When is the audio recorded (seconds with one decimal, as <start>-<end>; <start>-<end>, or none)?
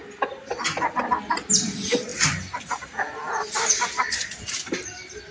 0.0-5.3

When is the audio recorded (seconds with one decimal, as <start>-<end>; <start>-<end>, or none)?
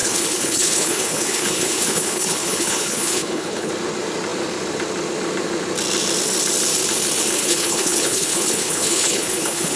3.7-7.4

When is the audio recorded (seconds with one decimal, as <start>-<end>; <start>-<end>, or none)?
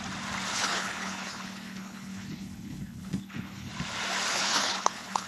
0.0-0.5; 3.7-4.3